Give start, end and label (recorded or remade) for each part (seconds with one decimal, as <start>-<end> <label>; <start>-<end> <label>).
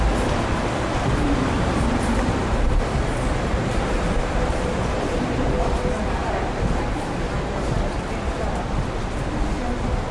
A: 0.0-0.6 recorded; 0.6-5.7 remade; 5.7-6.2 recorded; 6.2-6.8 remade; 6.8-10.1 recorded